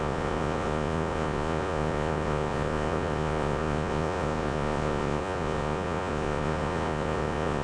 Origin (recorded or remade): remade